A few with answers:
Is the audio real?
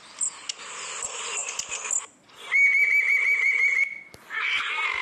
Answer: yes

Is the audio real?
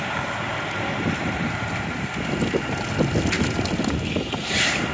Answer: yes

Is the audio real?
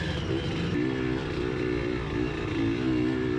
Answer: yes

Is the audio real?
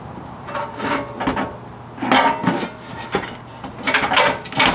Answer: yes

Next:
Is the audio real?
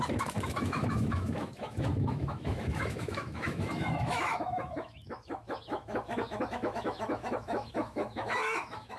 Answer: no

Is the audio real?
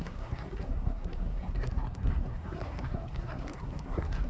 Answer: no